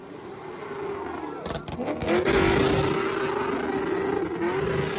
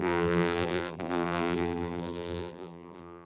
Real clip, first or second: first